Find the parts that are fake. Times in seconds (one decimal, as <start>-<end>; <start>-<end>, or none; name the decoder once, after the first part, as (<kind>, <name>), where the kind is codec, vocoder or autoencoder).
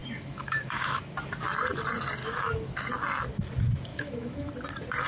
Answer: 0.0-1.0 (autoencoder, DAC-VAE); 2.2-2.9; 3.9-4.5